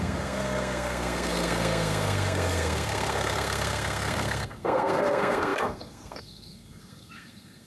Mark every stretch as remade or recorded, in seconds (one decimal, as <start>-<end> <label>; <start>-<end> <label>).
0.0-7.7 remade